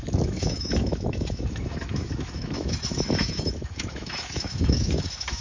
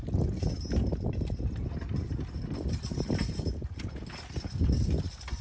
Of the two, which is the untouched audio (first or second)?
second